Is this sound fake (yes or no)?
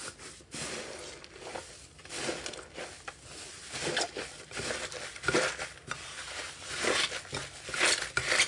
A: no